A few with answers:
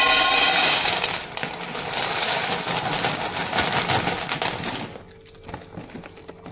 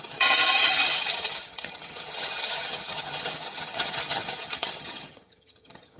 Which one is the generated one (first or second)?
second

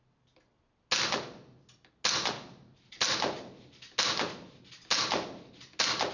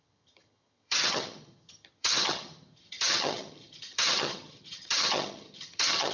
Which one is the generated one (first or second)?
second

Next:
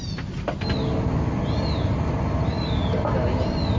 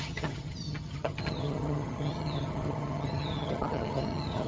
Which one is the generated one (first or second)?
second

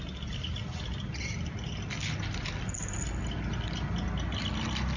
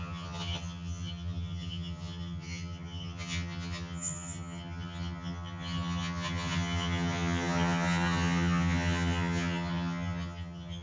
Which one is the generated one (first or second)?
second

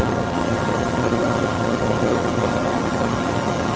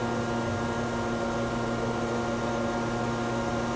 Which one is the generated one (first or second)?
first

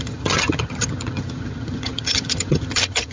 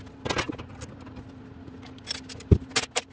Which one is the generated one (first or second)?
first